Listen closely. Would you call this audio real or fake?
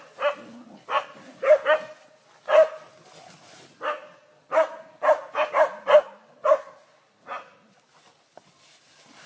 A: real